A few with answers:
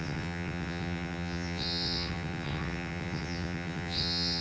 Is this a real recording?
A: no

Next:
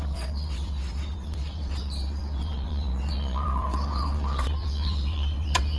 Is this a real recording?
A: no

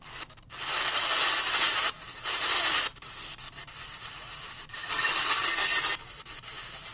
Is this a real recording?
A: yes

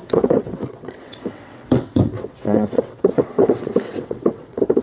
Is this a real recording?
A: no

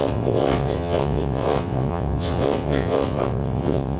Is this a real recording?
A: no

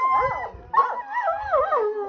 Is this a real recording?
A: yes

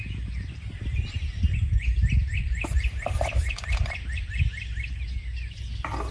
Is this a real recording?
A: yes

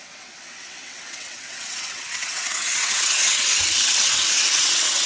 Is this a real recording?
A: no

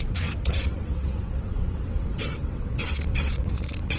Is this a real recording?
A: no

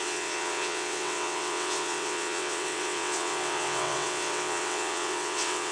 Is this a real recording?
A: no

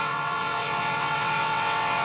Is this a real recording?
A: no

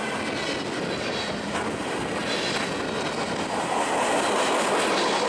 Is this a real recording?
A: yes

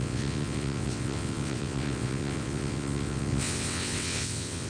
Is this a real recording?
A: no